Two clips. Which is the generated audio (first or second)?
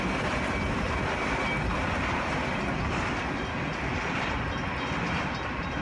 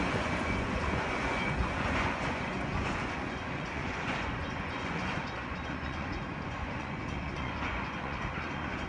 second